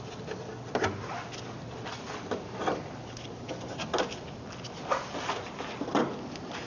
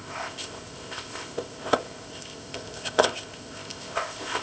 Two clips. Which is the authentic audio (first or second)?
first